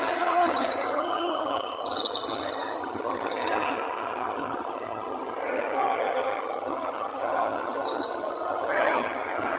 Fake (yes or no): yes